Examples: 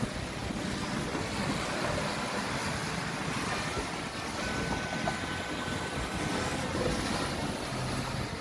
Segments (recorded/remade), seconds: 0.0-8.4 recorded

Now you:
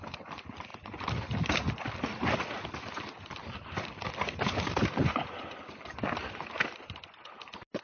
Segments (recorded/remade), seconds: 0.0-7.8 recorded